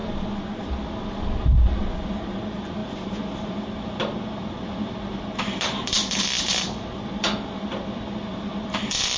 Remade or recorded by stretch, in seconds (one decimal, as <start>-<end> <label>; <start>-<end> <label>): 0.0-0.6 recorded; 0.6-2.8 remade; 2.8-6.2 recorded; 6.2-9.2 remade